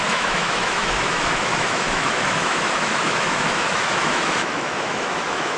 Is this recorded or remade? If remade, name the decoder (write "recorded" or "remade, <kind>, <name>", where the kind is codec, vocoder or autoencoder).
remade, autoencoder, DAC-VAE